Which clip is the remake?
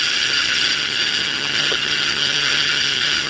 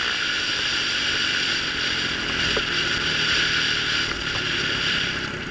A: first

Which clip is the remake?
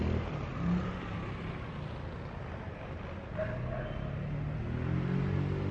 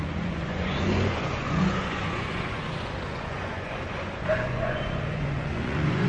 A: second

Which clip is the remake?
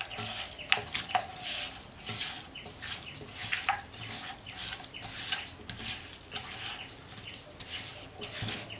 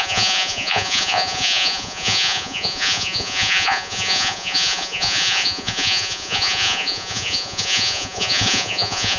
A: second